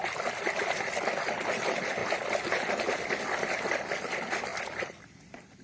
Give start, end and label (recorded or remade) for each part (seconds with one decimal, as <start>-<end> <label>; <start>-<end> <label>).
0.0-2.0 recorded; 2.0-2.7 remade; 2.7-4.5 recorded; 4.5-5.6 remade